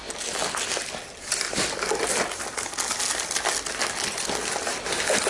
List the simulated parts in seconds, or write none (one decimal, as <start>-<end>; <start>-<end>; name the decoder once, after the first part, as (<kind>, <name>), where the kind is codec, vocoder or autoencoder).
none